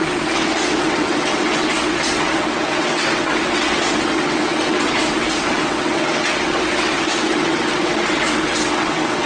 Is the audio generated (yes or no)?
yes